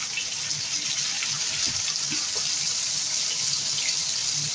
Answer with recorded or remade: recorded